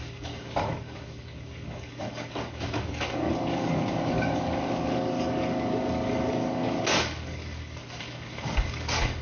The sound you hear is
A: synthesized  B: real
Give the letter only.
A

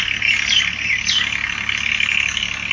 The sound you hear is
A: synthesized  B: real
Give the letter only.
B